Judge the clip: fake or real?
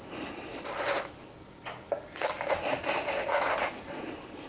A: real